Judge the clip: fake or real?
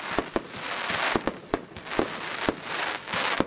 real